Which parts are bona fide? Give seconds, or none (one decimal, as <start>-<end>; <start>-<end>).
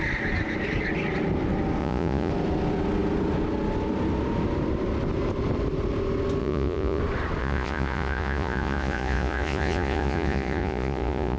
0.0-1.8; 2.3-6.4; 7.0-7.4